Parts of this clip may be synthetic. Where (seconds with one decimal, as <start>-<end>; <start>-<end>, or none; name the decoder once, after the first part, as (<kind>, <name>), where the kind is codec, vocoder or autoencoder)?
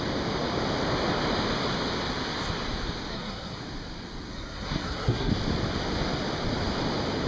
3.1-3.6 (codec, SNAC); 4.3-5.3